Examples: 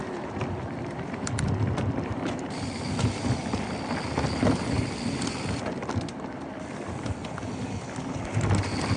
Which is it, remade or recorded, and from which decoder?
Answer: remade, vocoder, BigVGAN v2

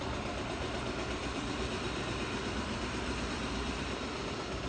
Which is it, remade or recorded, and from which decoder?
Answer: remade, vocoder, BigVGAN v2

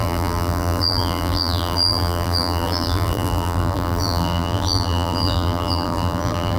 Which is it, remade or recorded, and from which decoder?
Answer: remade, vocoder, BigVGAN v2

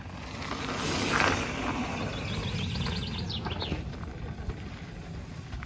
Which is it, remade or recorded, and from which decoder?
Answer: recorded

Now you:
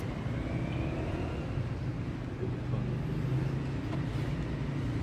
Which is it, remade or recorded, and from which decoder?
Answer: recorded